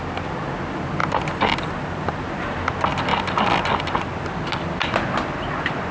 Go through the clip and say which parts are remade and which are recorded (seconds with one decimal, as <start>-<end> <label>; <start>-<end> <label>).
0.0-5.9 recorded